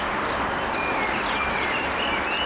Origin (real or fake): real